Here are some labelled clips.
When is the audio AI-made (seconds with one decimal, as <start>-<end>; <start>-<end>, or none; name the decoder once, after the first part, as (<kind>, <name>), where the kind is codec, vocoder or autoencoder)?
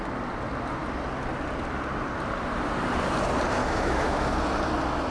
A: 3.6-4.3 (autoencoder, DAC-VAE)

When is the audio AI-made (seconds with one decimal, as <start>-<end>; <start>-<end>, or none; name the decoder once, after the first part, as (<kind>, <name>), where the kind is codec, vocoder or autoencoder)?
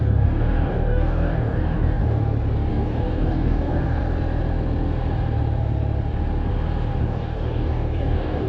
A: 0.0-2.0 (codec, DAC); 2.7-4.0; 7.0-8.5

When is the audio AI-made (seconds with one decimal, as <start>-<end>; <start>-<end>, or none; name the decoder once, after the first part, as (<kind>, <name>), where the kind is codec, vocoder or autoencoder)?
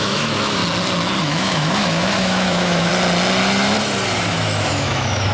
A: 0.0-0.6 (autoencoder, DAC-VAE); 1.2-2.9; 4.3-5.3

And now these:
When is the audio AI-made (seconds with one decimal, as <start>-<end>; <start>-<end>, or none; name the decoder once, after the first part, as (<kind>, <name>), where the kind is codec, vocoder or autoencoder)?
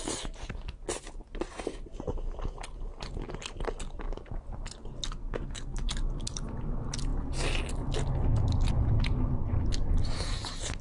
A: 5.2-5.9 (codec, SNAC)